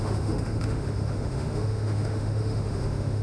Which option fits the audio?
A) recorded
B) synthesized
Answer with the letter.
B